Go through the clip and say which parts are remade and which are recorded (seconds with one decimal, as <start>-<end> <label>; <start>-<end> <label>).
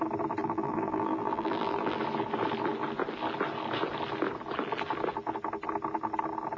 0.0-0.4 recorded; 0.4-2.0 remade; 2.0-6.6 recorded